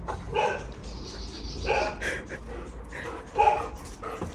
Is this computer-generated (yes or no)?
no